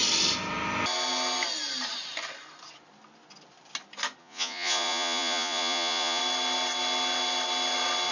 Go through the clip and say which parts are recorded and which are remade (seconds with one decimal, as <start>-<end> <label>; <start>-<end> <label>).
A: 0.0-4.2 recorded; 4.2-6.2 remade; 6.2-8.1 recorded